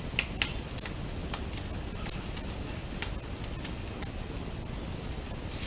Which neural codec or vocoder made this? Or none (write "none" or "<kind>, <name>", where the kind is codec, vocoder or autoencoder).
none